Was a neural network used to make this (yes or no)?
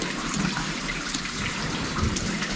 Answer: yes